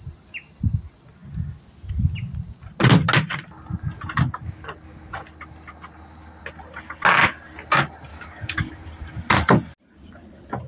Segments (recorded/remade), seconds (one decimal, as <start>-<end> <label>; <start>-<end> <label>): 0.0-8.1 recorded; 8.1-8.7 remade; 8.7-10.7 recorded